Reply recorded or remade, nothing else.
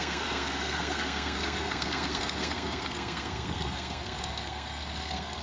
remade